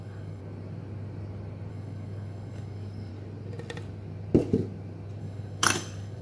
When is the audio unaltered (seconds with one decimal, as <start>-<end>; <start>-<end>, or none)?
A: 0.4-1.7; 3.1-5.2